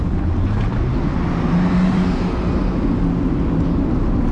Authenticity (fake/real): real